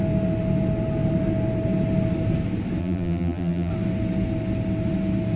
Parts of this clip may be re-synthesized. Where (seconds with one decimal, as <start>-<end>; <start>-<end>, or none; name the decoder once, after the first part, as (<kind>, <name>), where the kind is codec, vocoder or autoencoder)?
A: 2.8-3.7 (vocoder, BigVGAN v2)